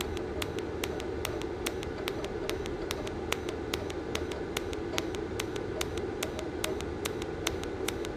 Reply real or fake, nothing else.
real